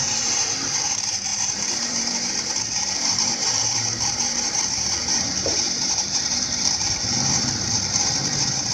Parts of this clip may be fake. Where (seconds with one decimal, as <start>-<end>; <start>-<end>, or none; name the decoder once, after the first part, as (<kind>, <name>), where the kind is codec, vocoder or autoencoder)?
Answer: 0.0-8.7 (vocoder, BigVGAN v2)